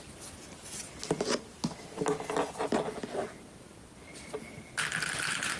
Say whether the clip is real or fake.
real